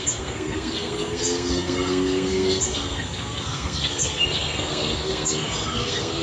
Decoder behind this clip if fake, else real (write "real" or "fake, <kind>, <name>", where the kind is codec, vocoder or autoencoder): fake, codec, SNAC